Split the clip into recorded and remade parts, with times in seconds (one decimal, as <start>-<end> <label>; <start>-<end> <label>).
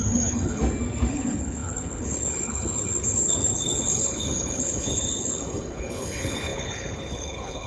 0.0-0.6 remade; 0.6-1.1 recorded; 1.1-7.7 remade